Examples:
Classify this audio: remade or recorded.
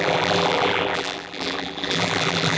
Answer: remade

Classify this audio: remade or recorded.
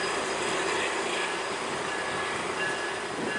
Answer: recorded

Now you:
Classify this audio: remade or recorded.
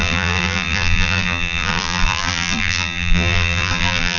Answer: remade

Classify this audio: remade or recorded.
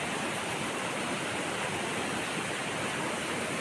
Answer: recorded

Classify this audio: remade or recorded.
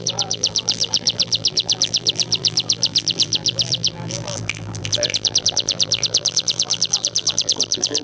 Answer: remade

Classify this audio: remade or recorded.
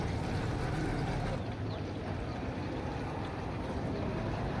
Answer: remade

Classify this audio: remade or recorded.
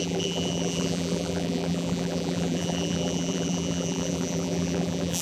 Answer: remade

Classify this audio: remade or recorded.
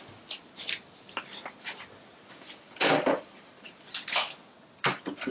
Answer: recorded